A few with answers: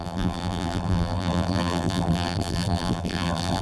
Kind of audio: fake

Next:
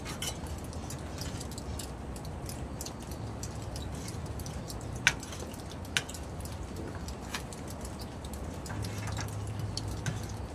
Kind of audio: real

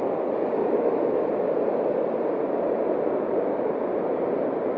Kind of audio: real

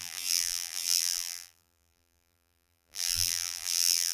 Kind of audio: fake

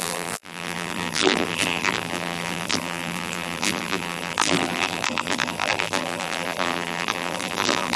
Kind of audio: fake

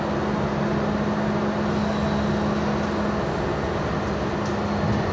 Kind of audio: real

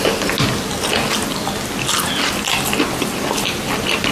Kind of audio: real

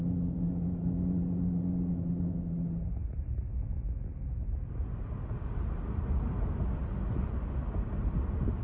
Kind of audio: real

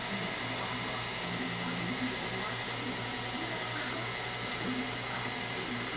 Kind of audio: real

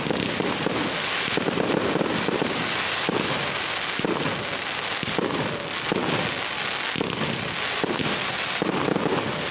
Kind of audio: real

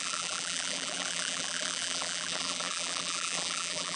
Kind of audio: fake